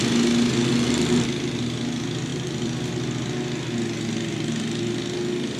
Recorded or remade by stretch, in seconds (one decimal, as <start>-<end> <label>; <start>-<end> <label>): 0.0-2.3 recorded; 2.3-2.9 remade; 2.9-5.6 recorded